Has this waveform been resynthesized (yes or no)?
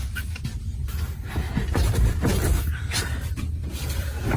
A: no